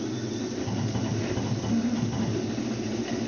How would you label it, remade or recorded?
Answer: recorded